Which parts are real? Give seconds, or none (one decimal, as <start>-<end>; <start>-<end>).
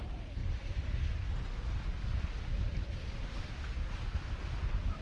0.0-5.0